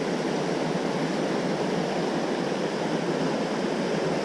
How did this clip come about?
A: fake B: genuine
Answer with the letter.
B